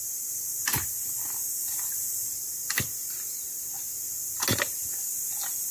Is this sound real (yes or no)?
yes